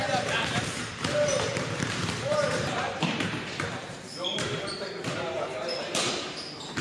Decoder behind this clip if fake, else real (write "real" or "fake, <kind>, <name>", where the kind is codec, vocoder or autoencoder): fake, vocoder, BigVGAN v2